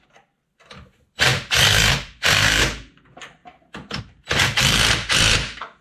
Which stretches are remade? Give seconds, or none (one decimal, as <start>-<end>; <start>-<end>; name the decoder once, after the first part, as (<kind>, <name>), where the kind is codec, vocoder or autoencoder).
0.0-1.3 (vocoder, BigVGAN v2); 1.9-3.4; 4.0-5.8